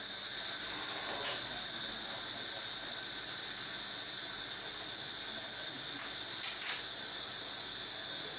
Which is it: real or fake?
real